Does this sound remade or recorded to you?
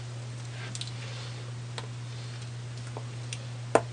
recorded